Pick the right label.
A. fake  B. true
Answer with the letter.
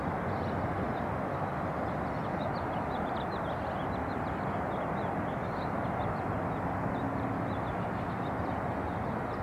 B